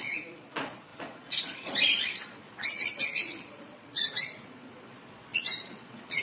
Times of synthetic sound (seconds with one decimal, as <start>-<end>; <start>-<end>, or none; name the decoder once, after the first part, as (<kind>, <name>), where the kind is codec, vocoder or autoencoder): 0.0-6.2 (vocoder, Vocos)

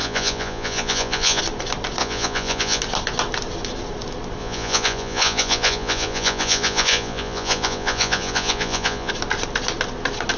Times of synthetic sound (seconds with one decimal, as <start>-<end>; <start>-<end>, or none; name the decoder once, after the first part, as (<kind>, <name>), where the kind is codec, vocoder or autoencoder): 0.0-1.4 (vocoder, Vocos); 2.0-2.8; 4.4-9.1

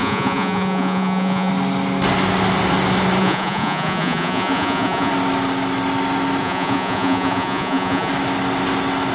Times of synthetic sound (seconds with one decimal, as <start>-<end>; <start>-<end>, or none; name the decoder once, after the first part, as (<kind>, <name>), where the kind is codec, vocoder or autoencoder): 0.0-1.5 (vocoder, Vocos); 3.2-5.1; 6.4-8.1

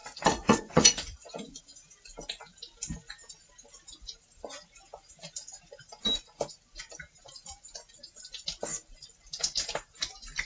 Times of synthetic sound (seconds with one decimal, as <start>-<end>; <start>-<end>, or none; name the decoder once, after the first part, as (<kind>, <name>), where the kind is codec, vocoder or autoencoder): 0.0-1.6 (vocoder, Vocos)